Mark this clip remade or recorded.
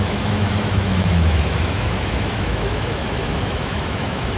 remade